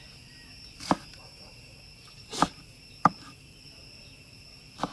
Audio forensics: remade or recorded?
remade